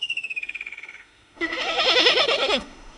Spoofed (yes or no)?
yes